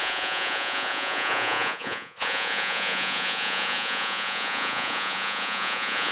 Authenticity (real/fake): fake